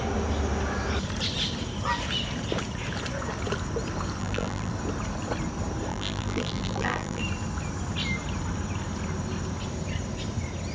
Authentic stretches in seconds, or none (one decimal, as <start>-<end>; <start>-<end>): 0.0-4.2; 4.7-5.9; 7.2-10.7